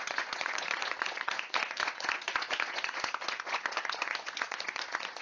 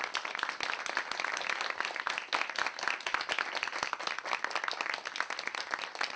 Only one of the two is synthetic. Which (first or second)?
first